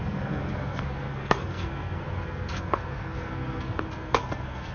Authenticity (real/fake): fake